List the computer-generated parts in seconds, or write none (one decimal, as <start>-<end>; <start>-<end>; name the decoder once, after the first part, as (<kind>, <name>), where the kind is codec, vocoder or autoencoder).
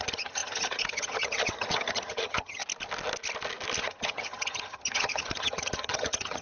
0.0-2.6 (vocoder, HiFi-GAN); 3.8-6.4